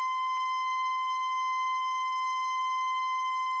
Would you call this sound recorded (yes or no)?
no